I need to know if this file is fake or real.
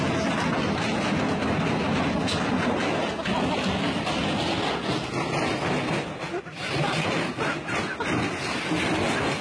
real